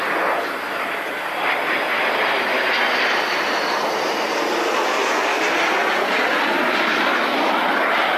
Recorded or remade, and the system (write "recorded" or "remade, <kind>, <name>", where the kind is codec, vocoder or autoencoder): recorded